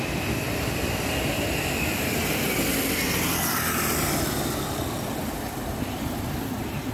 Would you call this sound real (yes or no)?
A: no